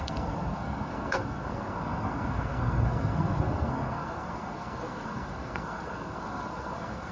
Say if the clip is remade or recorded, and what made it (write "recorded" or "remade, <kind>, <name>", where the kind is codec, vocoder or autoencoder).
remade, codec, SNAC